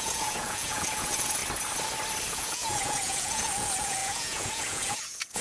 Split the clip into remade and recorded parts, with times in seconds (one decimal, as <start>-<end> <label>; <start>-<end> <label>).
0.0-1.4 remade; 1.4-2.3 recorded; 2.3-5.4 remade